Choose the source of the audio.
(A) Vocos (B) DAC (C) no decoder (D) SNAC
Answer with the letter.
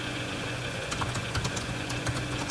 A